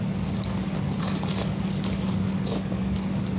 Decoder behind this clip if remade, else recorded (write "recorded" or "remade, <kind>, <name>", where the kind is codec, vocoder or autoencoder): remade, codec, DAC